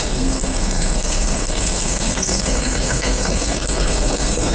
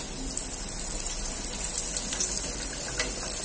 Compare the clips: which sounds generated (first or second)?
first